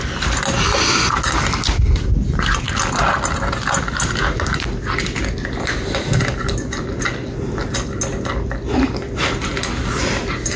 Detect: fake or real real